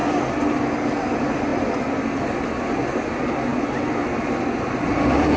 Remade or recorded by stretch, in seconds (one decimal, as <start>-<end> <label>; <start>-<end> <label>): 0.0-5.4 recorded